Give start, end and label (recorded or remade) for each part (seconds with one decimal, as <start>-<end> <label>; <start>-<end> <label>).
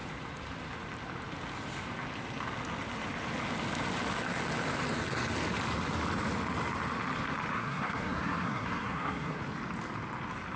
0.0-7.5 recorded; 7.5-9.4 remade; 9.4-10.6 recorded